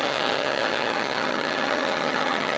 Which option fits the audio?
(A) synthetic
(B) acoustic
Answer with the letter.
A